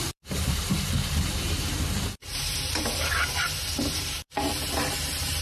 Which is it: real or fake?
fake